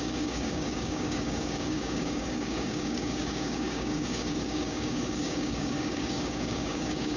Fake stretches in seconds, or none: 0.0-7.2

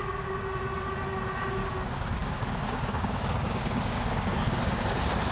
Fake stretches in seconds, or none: 1.6-4.8